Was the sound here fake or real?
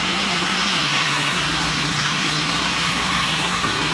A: fake